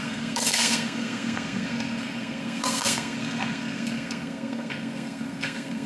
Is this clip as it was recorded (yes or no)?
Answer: no